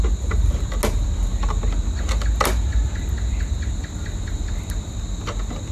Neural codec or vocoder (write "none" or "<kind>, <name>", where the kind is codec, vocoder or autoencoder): none